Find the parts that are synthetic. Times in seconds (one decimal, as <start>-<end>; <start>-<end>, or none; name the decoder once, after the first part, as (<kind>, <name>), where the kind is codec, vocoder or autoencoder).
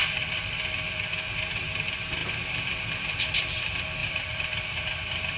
4.0-4.8 (vocoder, BigVGAN v2)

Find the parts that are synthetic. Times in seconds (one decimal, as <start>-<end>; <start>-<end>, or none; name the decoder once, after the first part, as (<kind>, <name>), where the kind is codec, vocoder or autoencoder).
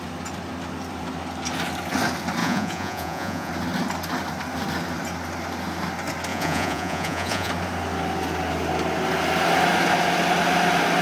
2.4-3.5 (vocoder, Vocos); 6.3-7.5